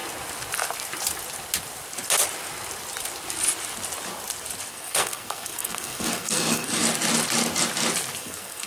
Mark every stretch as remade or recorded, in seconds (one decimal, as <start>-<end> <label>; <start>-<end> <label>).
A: 0.0-4.7 recorded; 4.7-6.8 remade; 6.8-8.2 recorded; 8.2-8.7 remade